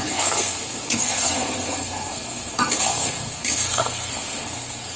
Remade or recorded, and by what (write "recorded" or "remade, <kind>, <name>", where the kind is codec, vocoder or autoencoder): remade, codec, SNAC